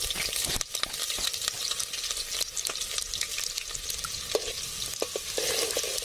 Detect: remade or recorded recorded